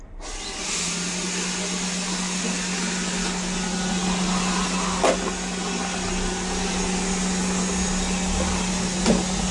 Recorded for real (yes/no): yes